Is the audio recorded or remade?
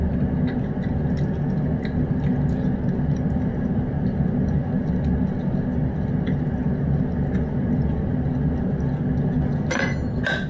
recorded